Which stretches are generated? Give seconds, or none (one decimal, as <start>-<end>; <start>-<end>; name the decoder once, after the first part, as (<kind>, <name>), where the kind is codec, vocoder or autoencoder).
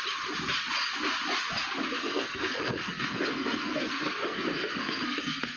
2.0-5.6 (codec, SNAC)